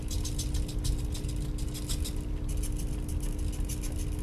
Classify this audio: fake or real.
real